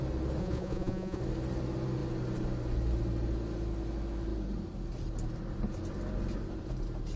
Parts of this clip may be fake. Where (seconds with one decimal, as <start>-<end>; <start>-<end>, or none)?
0.4-1.2